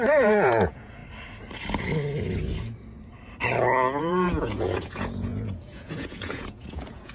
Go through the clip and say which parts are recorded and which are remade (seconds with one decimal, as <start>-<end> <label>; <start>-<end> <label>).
0.0-1.0 remade; 1.0-4.0 recorded; 4.0-7.1 remade